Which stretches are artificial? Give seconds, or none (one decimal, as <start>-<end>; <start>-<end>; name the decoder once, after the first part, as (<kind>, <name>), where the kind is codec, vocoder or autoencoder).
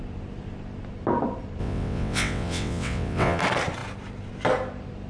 1.6-3.4 (vocoder, WaveNeXt)